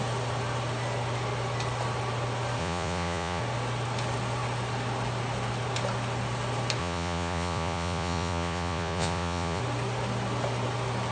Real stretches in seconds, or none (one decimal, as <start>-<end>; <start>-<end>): 0.0-2.6; 3.4-6.8; 9.6-11.1